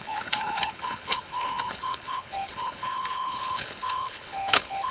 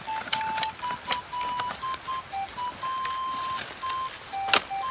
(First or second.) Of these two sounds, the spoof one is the first